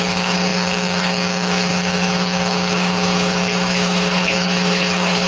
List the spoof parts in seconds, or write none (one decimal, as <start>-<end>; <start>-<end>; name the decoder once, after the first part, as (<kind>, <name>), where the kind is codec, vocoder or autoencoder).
0.0-5.3 (codec, HILCodec)